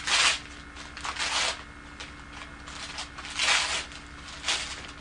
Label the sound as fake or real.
real